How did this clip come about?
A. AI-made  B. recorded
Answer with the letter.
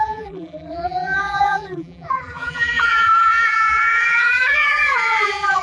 A